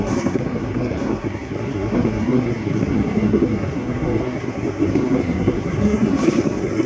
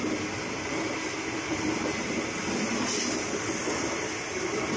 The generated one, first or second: first